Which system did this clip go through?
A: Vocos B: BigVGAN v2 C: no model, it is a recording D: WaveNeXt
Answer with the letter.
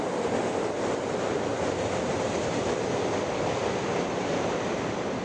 B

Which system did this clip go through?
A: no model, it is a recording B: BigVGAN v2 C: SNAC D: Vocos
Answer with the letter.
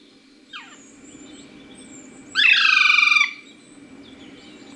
A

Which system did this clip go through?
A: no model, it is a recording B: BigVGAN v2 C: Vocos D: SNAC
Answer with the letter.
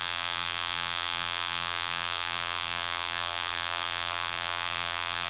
B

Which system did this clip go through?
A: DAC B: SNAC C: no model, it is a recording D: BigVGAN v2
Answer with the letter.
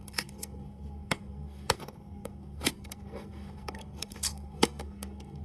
B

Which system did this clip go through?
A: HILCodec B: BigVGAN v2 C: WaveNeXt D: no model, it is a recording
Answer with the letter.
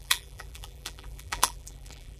B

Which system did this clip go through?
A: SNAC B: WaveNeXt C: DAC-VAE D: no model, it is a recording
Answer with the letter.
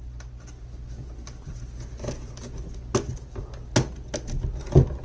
D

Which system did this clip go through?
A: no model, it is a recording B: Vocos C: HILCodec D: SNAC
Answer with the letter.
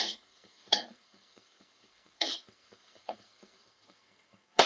D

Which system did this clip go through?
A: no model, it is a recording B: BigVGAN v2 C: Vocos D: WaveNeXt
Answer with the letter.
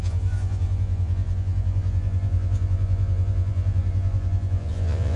C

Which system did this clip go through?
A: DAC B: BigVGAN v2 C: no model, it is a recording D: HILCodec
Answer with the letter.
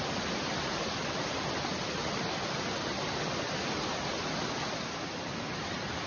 C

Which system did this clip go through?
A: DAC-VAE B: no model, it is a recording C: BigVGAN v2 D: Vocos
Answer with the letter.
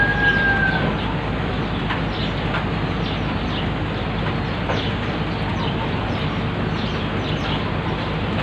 B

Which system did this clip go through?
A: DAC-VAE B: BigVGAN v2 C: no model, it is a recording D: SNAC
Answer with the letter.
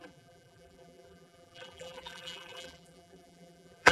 B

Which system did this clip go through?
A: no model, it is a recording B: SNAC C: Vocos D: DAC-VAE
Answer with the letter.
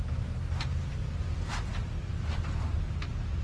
A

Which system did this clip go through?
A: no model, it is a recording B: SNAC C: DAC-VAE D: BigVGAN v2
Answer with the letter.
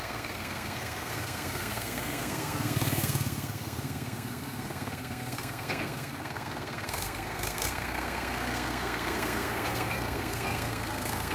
B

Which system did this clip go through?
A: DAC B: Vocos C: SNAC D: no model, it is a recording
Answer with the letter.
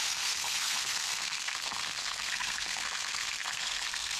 C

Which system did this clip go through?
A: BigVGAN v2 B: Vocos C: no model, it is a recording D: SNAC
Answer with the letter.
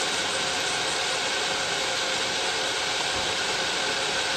C